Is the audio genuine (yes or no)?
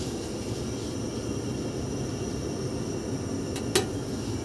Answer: yes